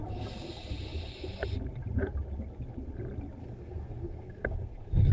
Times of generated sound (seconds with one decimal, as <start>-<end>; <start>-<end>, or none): 3.4-5.1